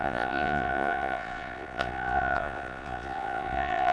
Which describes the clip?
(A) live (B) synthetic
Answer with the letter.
B